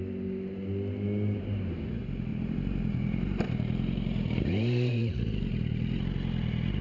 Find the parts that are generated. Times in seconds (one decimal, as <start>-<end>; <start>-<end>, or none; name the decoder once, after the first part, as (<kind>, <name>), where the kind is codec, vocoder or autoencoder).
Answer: 2.3-6.0 (vocoder, BigVGAN v2)

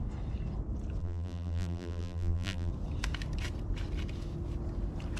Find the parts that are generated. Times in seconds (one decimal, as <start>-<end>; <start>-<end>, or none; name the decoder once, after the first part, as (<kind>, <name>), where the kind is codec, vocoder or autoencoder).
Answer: 1.0-2.7 (vocoder, BigVGAN v2)